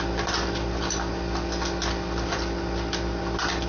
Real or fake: real